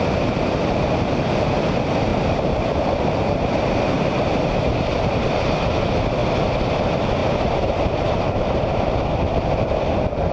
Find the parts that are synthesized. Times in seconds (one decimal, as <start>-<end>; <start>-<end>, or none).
2.1-5.7; 7.2-9.4